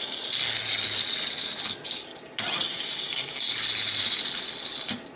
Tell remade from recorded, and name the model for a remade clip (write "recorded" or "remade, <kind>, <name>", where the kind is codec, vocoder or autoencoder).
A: recorded